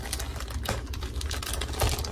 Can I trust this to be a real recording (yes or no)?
yes